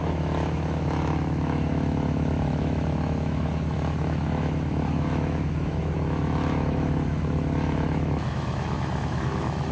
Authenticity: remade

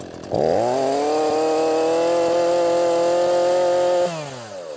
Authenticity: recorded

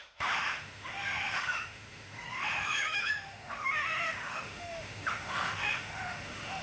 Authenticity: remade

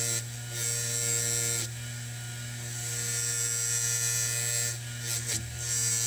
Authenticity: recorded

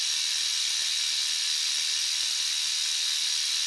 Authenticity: recorded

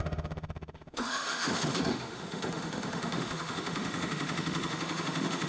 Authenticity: remade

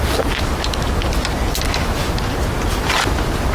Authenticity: recorded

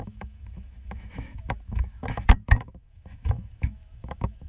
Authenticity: remade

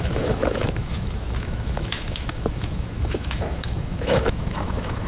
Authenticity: remade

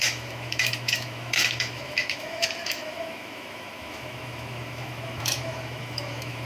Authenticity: remade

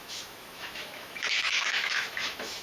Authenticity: remade